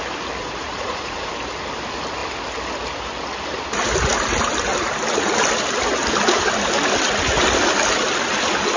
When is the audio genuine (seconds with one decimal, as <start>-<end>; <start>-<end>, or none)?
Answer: 0.0-0.4; 1.3-8.8